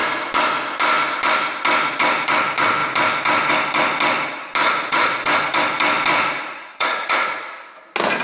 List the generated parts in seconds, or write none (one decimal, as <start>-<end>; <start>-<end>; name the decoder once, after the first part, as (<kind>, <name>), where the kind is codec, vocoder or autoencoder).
4.6-5.4 (vocoder, Vocos); 6.1-7.7